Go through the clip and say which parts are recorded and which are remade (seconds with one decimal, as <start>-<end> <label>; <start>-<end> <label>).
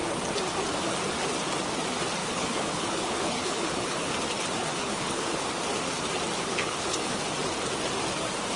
0.0-2.2 recorded; 2.2-4.1 remade; 4.1-4.8 recorded; 4.8-5.5 remade; 5.5-6.4 recorded; 6.4-7.2 remade; 7.2-8.6 recorded